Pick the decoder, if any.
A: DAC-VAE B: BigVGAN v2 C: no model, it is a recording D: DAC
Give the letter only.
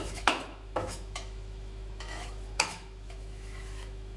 A